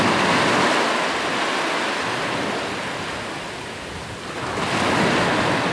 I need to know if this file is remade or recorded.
recorded